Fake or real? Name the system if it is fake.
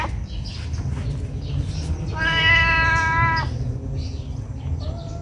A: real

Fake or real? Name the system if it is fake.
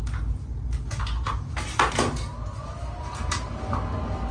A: real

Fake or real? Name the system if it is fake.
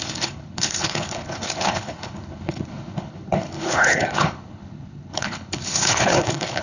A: fake, codec, HILCodec